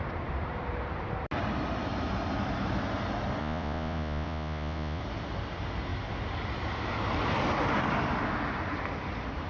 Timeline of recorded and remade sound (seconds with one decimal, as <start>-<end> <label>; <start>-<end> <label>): 0.0-3.4 recorded; 3.4-5.0 remade; 5.0-9.5 recorded